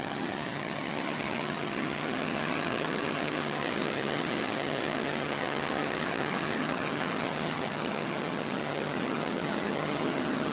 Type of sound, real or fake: fake